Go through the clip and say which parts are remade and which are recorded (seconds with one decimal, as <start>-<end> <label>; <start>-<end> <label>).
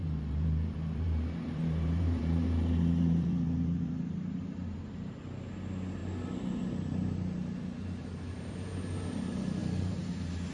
0.0-5.1 remade; 5.1-9.6 recorded; 9.6-10.1 remade; 10.1-10.5 recorded